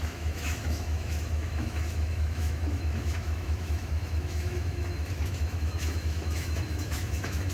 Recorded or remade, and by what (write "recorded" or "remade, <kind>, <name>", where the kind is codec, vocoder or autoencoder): remade, autoencoder, DAC-VAE